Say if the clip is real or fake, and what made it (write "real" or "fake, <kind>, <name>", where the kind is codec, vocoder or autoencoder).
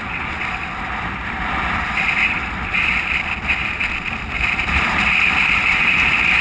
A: fake, vocoder, BigVGAN v2